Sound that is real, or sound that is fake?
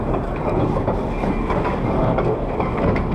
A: fake